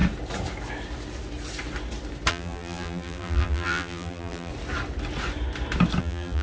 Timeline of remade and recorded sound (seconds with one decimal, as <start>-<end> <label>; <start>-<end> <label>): 0.0-2.3 recorded; 2.3-4.5 remade; 4.5-6.0 recorded; 6.0-6.4 remade